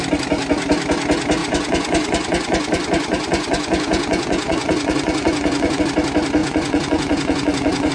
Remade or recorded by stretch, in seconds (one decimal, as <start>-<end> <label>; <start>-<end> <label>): 0.0-1.4 recorded; 1.4-5.8 remade; 5.8-6.4 recorded; 6.4-7.9 remade